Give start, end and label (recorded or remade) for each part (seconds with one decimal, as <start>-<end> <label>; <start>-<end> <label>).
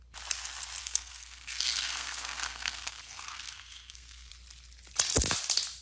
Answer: 0.0-0.8 recorded; 0.8-4.3 remade; 4.3-5.8 recorded